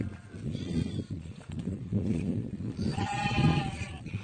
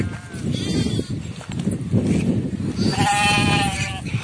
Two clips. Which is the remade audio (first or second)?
first